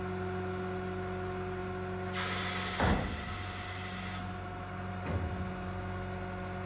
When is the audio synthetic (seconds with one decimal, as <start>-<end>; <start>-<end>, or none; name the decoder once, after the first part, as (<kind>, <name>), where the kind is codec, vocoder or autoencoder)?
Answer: none

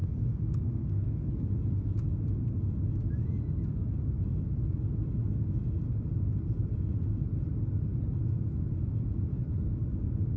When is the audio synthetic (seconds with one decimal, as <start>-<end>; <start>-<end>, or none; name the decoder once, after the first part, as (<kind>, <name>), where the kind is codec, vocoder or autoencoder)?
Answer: 0.0-1.3 (codec, SNAC)

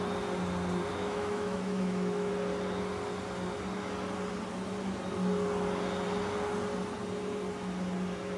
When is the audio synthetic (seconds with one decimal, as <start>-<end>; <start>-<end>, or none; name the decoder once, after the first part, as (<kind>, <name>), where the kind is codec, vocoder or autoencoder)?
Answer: 0.9-2.3 (autoencoder, DAC-VAE)

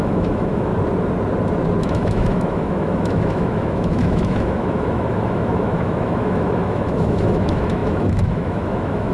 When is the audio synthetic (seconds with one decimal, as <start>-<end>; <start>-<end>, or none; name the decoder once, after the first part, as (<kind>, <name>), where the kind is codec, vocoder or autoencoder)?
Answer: 0.0-0.7 (autoencoder, DAC-VAE); 1.8-9.1

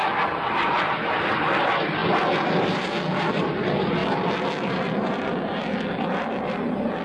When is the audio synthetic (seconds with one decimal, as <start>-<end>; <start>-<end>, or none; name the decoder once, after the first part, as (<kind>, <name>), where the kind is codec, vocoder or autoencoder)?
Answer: 0.5-2.0 (vocoder, BigVGAN v2); 2.7-4.0; 4.7-5.5; 6.0-7.0

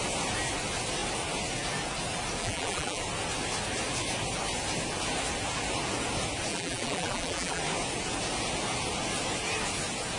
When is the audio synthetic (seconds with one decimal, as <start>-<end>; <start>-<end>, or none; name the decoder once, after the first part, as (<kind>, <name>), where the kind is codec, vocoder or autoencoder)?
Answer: 2.4-3.0 (vocoder, BigVGAN v2); 6.5-7.6

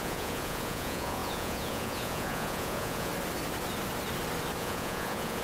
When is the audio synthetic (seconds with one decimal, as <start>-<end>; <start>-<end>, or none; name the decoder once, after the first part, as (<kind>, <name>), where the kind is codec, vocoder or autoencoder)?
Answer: 0.0-3.1 (vocoder, Vocos); 4.6-5.4